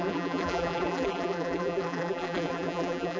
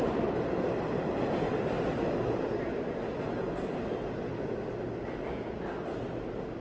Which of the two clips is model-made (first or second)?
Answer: first